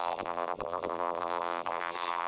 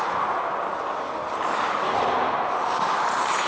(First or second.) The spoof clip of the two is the first